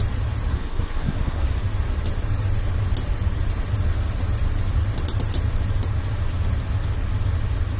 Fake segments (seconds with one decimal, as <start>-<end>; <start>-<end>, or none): 0.5-1.6